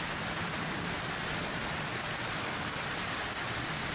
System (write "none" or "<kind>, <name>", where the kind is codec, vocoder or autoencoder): vocoder, BigVGAN v2